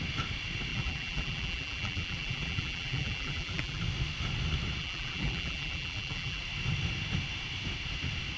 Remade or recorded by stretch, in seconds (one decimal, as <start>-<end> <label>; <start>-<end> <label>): 0.0-0.7 recorded; 0.7-3.8 remade; 3.8-4.8 recorded; 4.8-6.4 remade; 6.4-8.4 recorded